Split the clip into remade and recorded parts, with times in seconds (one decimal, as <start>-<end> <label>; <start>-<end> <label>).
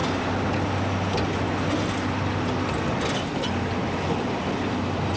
0.0-5.2 recorded